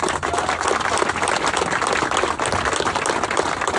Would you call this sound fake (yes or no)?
no